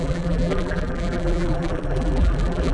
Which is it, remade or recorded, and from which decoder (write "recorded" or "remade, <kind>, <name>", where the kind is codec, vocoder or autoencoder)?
remade, vocoder, BigVGAN v2